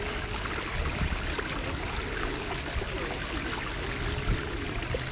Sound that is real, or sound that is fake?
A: real